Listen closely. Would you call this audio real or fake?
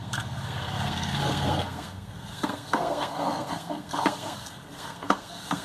fake